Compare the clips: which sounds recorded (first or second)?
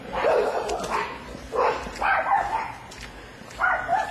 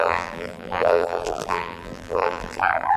first